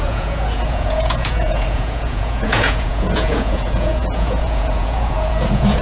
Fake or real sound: fake